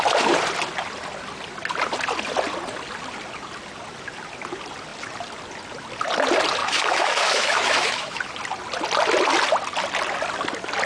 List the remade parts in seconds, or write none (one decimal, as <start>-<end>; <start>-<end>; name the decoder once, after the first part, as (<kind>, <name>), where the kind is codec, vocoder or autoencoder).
6.6-8.2 (autoencoder, DAC-VAE)